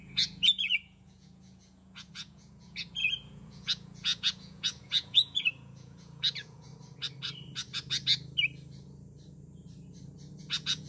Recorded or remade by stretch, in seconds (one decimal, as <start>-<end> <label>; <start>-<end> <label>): 0.0-6.7 remade; 6.7-10.4 recorded; 10.4-10.9 remade